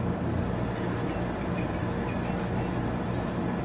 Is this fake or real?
real